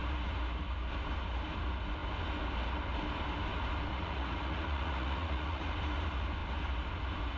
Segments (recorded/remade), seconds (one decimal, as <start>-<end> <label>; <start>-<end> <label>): 0.0-3.9 recorded; 3.9-5.7 remade; 5.7-7.4 recorded

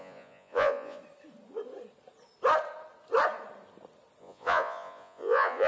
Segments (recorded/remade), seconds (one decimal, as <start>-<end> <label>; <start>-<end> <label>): 0.0-1.0 remade; 1.0-4.2 recorded; 4.2-5.7 remade

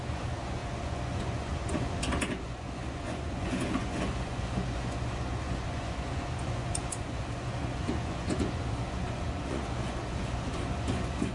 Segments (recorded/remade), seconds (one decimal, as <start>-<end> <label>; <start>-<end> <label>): 0.0-11.3 remade

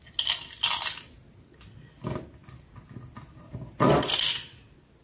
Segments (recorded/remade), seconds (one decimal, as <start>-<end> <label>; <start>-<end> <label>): 0.0-5.0 recorded

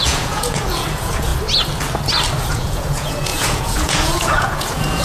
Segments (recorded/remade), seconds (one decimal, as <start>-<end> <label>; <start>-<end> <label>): 0.0-1.3 remade; 1.3-2.5 recorded; 2.5-5.0 remade

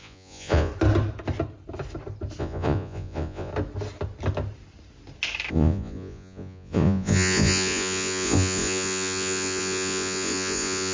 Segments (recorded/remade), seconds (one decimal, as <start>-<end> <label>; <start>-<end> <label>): 0.0-0.7 remade; 0.7-2.4 recorded; 2.4-3.5 remade; 3.5-5.5 recorded; 5.5-10.9 remade

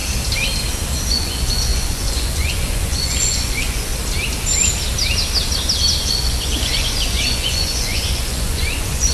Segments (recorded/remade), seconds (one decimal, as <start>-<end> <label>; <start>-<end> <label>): 0.0-1.1 recorded; 1.1-3.9 remade; 3.9-6.0 recorded; 6.0-9.1 remade

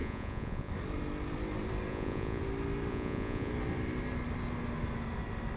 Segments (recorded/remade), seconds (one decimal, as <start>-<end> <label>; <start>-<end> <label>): 0.0-0.7 remade; 0.7-1.9 recorded; 1.9-2.4 remade; 2.4-2.9 recorded; 2.9-3.5 remade; 3.5-5.6 recorded